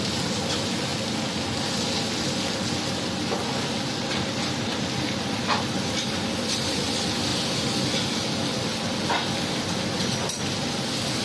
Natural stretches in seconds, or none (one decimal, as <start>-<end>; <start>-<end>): 0.0-11.2